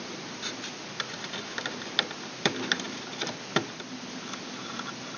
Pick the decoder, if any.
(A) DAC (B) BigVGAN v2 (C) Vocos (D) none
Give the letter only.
D